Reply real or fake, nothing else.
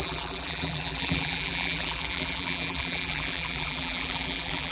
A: fake